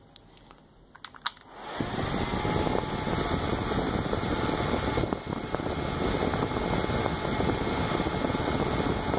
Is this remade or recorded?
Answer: recorded